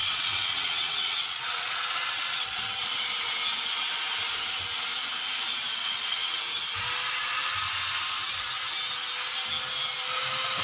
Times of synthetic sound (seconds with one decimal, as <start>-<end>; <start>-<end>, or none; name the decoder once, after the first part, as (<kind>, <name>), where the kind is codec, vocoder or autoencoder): 0.0-3.0 (vocoder, WaveNeXt); 5.8-6.4